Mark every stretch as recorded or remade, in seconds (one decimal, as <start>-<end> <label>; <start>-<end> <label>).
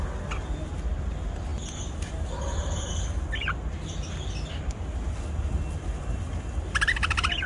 0.0-7.5 recorded